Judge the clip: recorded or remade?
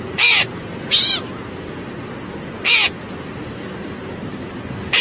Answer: recorded